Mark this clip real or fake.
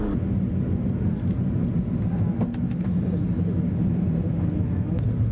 real